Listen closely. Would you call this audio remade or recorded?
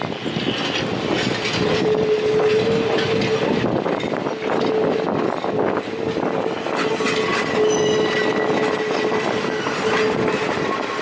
recorded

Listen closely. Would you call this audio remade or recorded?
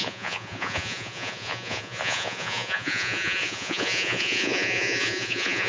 remade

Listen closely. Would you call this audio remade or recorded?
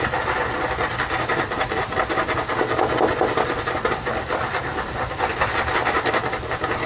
recorded